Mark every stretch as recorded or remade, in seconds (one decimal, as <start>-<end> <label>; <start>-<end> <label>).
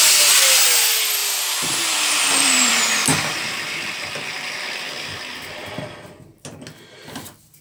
0.0-1.2 recorded; 1.2-2.8 remade; 2.8-7.6 recorded